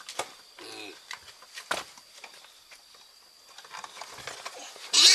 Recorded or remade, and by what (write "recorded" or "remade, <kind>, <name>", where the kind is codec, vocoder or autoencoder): recorded